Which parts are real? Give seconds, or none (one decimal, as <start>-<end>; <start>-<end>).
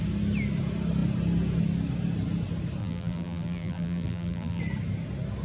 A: 0.0-2.8; 4.6-5.4